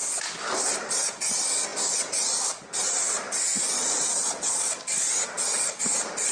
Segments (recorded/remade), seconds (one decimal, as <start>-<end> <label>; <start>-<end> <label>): 0.0-6.3 recorded